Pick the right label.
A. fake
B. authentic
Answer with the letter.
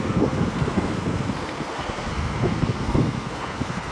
A